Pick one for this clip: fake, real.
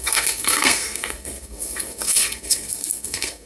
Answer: fake